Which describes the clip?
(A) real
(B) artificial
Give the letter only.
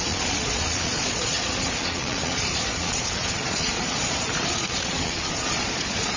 B